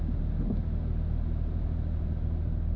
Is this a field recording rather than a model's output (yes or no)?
yes